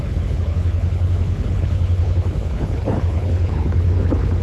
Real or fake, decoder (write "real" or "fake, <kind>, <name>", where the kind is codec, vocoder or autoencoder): fake, codec, HILCodec